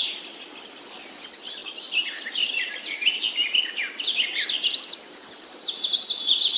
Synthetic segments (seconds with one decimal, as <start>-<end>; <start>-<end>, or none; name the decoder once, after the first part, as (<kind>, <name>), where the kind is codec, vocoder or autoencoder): none